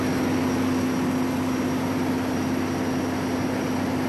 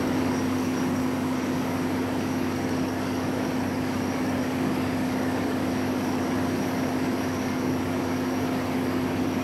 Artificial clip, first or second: second